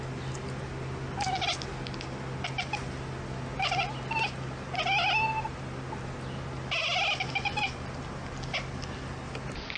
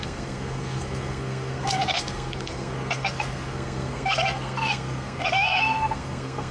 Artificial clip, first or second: second